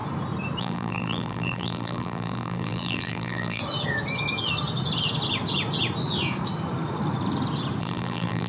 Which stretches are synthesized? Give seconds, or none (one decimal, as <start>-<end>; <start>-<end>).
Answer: 0.6-3.6; 7.8-8.5